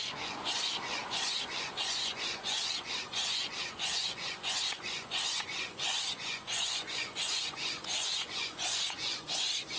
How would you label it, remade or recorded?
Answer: remade